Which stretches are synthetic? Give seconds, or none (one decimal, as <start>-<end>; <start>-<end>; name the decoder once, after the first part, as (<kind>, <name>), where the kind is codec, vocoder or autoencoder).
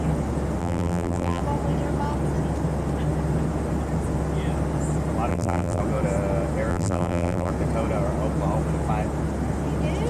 0.6-1.4 (vocoder, BigVGAN v2); 5.3-5.8; 6.7-7.5